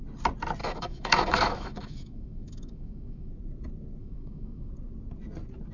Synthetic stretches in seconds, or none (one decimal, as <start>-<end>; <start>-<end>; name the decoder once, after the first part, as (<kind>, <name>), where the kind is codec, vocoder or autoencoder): 0.6-3.3 (autoencoder, DAC-VAE); 4.0-4.7